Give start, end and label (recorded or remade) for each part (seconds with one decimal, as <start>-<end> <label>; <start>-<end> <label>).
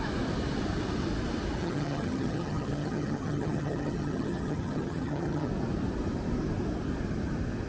0.0-1.6 recorded; 1.6-5.5 remade; 5.5-7.7 recorded